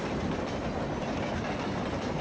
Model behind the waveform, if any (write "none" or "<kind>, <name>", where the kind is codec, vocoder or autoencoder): none